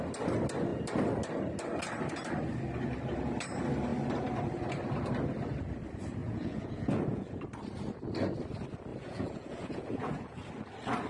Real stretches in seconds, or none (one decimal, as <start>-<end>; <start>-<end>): 0.0-6.2; 7.4-8.9; 10.5-11.1